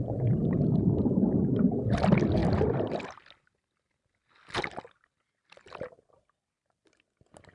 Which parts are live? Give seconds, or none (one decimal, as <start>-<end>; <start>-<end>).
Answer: 0.0-7.5